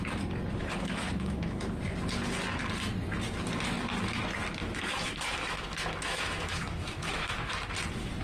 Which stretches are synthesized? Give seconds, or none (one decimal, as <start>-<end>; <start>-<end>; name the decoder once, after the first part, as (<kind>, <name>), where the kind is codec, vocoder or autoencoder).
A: 0.6-1.6 (autoencoder, DAC-VAE); 4.6-7.5